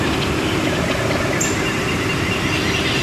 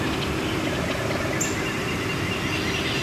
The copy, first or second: first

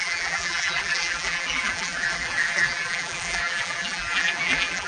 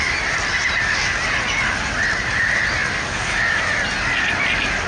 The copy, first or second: first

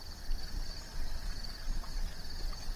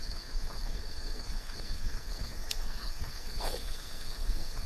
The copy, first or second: second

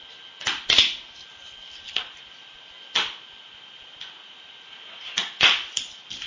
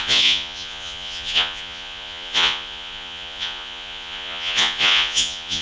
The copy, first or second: second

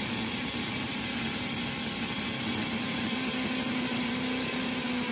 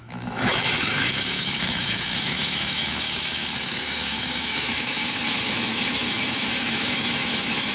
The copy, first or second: second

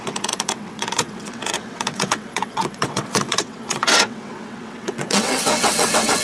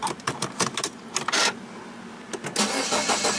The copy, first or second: first